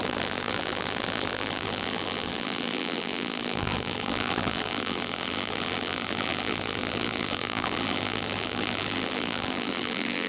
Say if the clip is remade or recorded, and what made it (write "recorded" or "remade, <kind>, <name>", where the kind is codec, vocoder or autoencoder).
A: remade, vocoder, BigVGAN v2